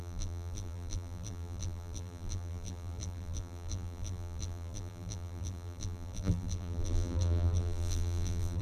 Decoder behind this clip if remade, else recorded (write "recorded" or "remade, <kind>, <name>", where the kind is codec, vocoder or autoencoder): remade, vocoder, BigVGAN v2